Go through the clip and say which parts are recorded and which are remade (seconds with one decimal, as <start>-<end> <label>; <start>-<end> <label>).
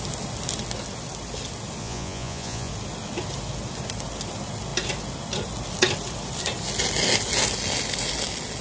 0.0-1.8 recorded; 1.8-2.7 remade; 2.7-8.6 recorded